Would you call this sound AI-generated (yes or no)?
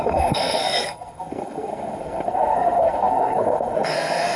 yes